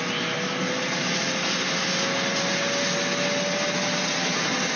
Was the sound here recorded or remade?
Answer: recorded